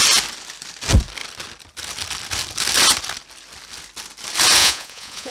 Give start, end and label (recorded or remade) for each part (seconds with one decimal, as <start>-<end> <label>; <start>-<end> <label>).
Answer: 0.0-4.6 recorded; 4.6-5.3 remade